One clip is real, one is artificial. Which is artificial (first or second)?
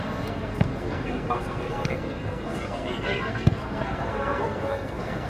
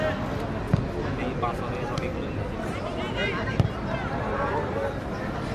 first